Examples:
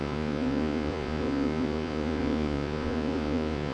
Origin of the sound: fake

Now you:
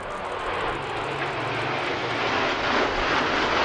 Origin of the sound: real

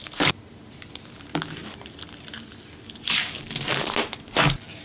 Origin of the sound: real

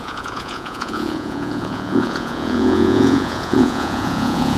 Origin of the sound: fake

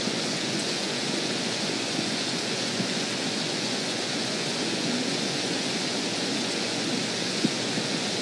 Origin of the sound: fake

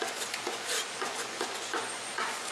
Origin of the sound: fake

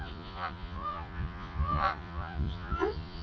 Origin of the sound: fake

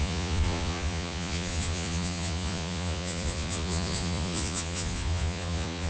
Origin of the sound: fake